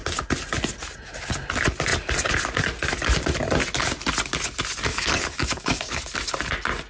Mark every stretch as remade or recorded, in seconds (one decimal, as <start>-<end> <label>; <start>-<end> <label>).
0.0-4.9 recorded; 4.9-6.0 remade; 6.0-6.9 recorded

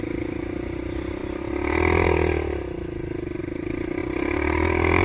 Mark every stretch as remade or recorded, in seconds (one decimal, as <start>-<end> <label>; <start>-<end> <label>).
0.0-5.0 recorded